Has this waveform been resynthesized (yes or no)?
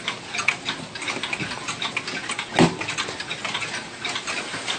no